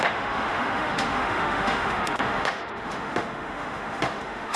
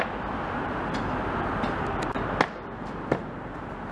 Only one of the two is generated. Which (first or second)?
first